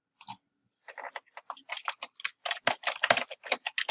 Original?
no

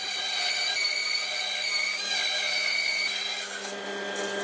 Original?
yes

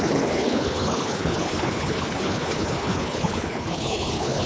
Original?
no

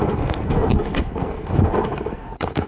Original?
no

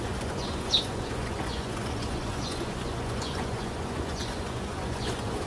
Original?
no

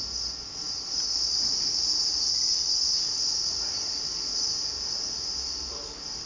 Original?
yes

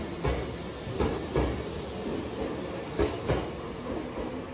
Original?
yes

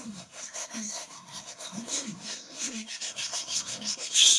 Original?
no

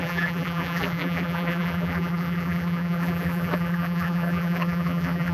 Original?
no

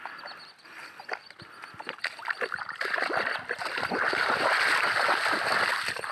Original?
yes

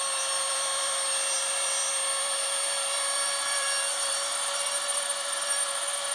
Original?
no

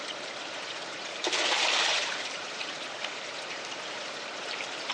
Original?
no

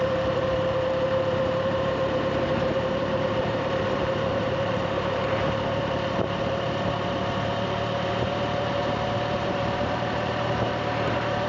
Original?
no